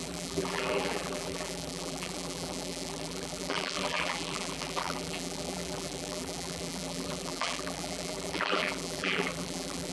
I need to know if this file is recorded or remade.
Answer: remade